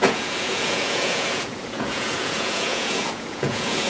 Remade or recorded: remade